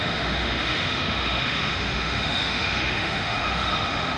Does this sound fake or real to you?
fake